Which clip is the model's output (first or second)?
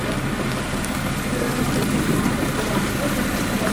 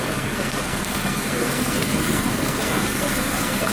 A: second